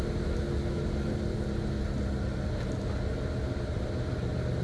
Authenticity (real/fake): real